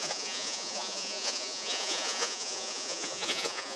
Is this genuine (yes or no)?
no